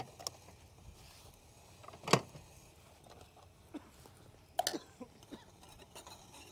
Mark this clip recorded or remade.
recorded